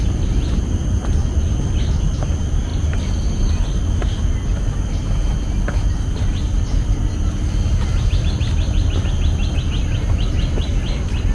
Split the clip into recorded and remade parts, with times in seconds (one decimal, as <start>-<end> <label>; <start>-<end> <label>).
0.0-11.3 recorded